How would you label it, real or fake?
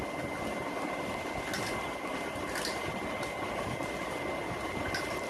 real